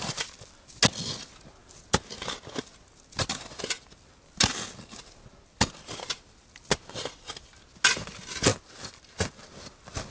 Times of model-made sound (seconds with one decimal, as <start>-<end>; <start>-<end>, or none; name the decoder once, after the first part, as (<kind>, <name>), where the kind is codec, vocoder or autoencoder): none